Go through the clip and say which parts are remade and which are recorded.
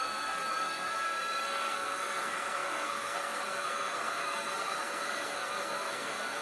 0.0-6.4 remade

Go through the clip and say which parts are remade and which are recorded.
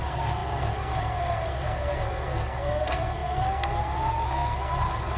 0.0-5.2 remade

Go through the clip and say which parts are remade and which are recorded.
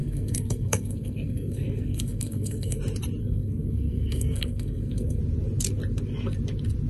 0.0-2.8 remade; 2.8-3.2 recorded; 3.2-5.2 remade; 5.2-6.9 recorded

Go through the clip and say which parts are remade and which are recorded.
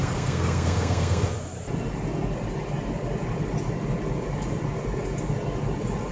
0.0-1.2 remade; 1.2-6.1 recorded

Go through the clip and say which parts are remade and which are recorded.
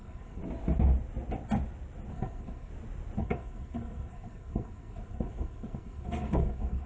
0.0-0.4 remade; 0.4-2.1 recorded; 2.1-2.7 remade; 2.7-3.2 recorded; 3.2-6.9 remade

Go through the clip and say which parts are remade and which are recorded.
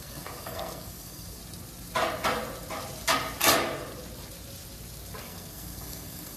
0.0-1.4 remade; 1.4-5.2 recorded; 5.2-6.4 remade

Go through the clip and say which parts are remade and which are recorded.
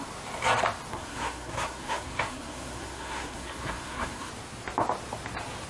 0.0-0.9 recorded; 0.9-4.3 remade; 4.3-5.7 recorded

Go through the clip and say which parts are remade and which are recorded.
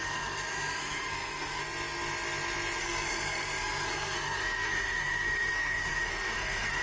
0.0-1.6 remade; 1.6-2.8 recorded; 2.8-6.8 remade